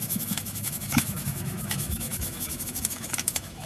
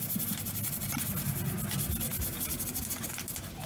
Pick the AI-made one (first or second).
first